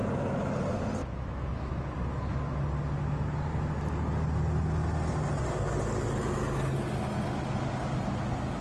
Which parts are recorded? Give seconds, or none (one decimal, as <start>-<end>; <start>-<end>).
0.0-1.0; 1.7-8.6